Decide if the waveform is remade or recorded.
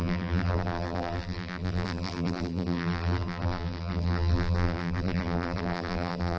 remade